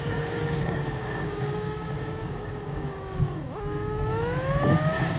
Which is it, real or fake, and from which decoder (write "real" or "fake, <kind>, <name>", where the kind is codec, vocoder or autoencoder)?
fake, codec, DAC